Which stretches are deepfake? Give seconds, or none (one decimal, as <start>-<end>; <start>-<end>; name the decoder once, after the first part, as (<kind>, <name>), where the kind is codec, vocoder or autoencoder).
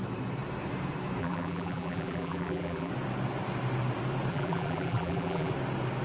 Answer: 1.2-2.9 (vocoder, BigVGAN v2); 4.3-5.5